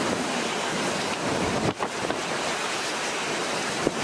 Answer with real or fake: real